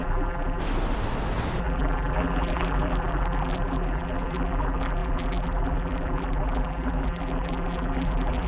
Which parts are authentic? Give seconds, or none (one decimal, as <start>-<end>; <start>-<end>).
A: 0.6-1.6